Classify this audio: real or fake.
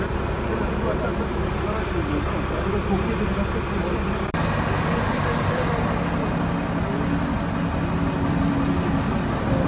real